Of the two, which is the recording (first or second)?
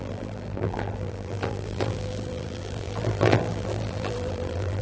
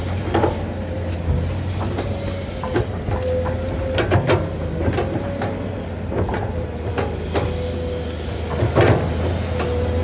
second